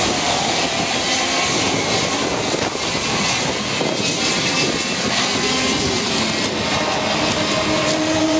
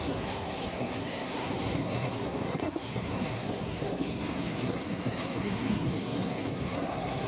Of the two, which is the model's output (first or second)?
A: second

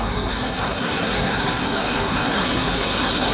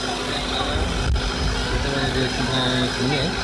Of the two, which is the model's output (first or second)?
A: first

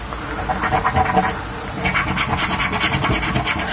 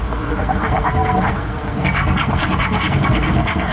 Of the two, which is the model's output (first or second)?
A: second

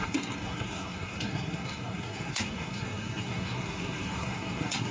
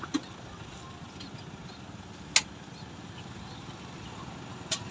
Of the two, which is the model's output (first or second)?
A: first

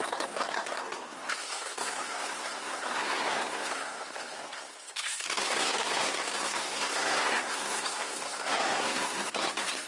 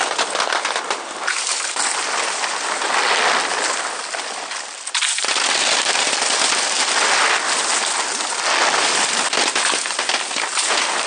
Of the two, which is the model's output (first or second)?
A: first